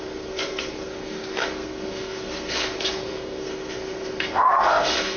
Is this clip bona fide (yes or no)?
no